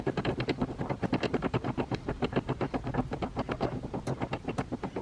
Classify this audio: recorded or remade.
remade